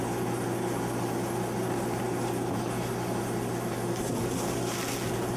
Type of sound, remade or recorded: recorded